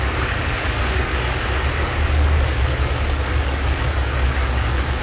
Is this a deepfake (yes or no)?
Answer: yes